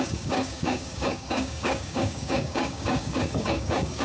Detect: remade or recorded remade